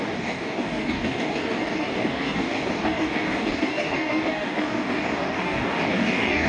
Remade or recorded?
remade